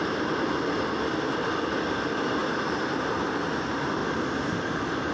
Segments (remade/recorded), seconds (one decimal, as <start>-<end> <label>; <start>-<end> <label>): 0.0-2.4 recorded; 2.4-3.0 remade; 3.0-5.1 recorded